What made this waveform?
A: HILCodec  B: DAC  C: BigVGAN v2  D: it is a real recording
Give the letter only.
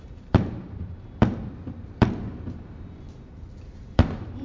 C